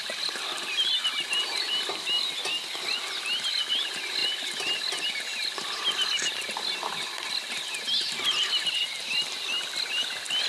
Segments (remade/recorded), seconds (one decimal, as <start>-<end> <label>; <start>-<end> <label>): 0.0-10.5 recorded